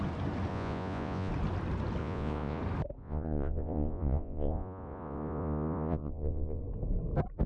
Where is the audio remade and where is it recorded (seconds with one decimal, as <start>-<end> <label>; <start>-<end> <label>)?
0.0-0.5 recorded; 0.5-1.3 remade; 1.3-2.0 recorded; 2.0-2.6 remade; 2.6-3.0 recorded; 3.0-6.6 remade; 6.6-7.5 recorded